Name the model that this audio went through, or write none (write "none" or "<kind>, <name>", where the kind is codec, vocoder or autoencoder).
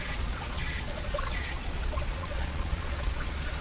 vocoder, Vocos